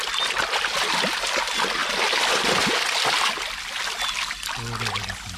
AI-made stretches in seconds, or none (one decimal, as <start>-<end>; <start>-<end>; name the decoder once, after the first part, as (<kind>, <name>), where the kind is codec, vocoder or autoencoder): none